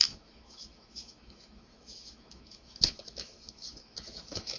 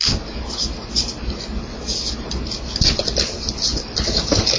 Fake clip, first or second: first